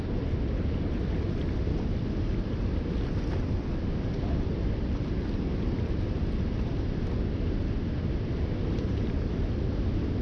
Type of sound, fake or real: real